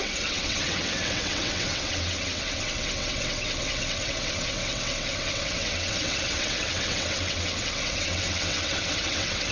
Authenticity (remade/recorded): remade